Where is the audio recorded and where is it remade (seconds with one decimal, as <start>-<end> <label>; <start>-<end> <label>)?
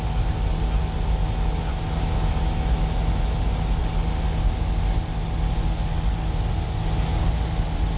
0.0-8.0 recorded